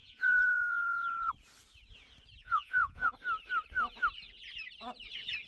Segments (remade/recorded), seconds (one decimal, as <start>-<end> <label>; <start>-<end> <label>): 0.0-1.3 remade; 1.3-2.4 recorded; 2.4-3.1 remade; 3.1-5.5 recorded